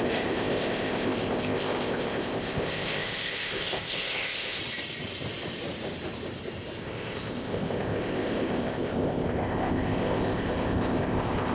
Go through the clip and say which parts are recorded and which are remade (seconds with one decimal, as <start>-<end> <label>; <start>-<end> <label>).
0.0-4.6 remade; 4.6-6.8 recorded; 6.8-11.5 remade